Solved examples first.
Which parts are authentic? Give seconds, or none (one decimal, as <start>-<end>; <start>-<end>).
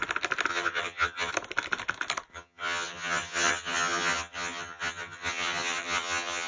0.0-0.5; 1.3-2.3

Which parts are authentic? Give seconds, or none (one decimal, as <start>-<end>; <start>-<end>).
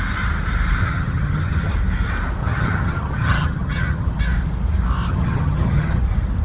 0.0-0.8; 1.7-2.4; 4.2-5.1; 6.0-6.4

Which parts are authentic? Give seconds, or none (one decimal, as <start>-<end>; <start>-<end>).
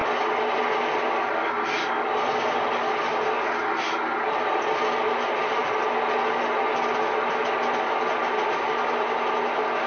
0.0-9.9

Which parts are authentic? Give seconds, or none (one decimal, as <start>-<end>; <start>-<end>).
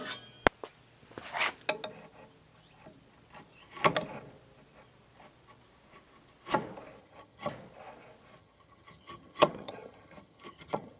0.0-7.0; 7.5-8.4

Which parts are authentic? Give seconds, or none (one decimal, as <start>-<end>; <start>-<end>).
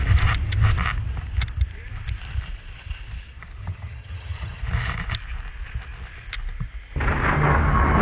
0.0-3.6; 4.6-8.0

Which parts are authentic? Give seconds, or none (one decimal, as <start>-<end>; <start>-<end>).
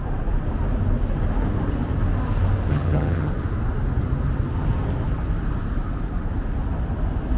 0.0-2.7; 3.3-7.4